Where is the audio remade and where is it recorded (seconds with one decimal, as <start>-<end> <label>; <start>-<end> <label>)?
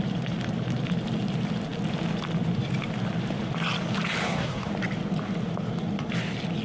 0.0-4.2 recorded; 4.2-4.7 remade; 4.7-6.6 recorded